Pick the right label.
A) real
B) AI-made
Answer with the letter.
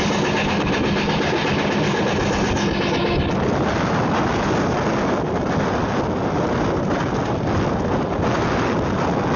A